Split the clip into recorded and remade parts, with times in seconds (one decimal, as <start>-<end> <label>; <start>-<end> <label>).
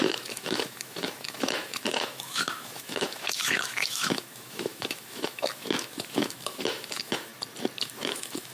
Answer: 0.0-7.3 remade; 7.3-7.8 recorded; 7.8-8.5 remade